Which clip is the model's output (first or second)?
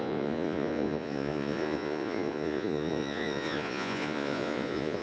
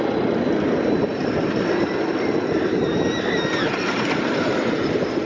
first